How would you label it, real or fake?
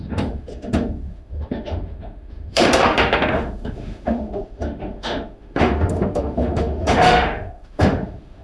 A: fake